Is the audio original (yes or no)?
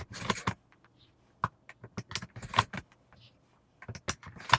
yes